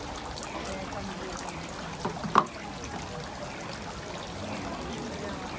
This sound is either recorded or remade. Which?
recorded